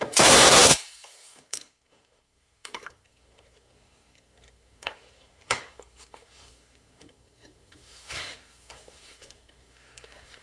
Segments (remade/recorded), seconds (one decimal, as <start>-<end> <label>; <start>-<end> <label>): 0.0-10.4 remade